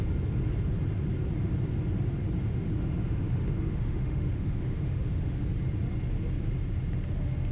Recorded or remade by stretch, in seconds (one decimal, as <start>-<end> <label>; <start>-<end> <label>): 0.0-2.5 recorded; 2.5-5.4 remade; 5.4-7.5 recorded